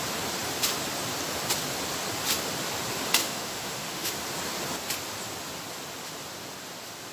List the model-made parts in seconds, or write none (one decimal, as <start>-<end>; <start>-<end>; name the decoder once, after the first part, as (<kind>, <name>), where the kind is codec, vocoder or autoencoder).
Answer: 3.2-4.1 (autoencoder, DAC-VAE)